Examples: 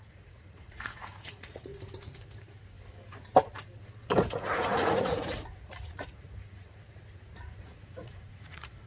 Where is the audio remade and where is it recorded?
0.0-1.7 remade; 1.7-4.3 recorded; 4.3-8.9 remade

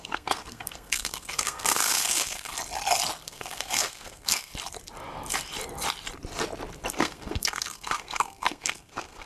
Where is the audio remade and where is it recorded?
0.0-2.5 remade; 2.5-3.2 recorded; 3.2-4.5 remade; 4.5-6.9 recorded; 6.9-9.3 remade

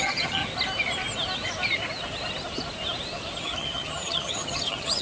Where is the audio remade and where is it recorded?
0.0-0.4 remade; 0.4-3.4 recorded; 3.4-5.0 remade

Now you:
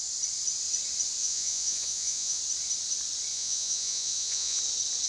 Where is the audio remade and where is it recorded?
0.0-1.2 recorded; 1.2-2.4 remade; 2.4-3.3 recorded; 3.3-4.6 remade; 4.6-5.1 recorded